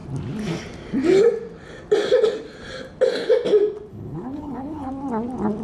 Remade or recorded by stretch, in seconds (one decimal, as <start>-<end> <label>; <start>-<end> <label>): 0.0-3.9 recorded; 3.9-4.9 remade; 4.9-5.6 recorded